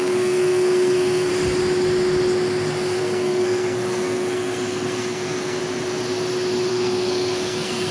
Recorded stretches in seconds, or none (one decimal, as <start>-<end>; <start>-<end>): 1.3-3.0; 5.6-6.7